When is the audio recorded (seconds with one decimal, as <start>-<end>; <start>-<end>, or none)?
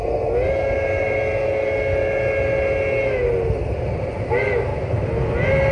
0.0-5.7